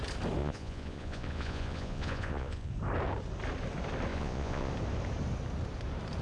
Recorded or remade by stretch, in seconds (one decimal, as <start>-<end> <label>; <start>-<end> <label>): 0.0-0.4 recorded; 0.4-2.7 remade; 2.7-4.1 recorded; 4.1-4.7 remade; 4.7-6.2 recorded